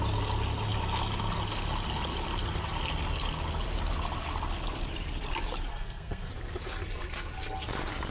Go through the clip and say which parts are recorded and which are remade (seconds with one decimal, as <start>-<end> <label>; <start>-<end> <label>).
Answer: 0.0-5.7 recorded; 5.7-6.3 remade; 6.3-8.1 recorded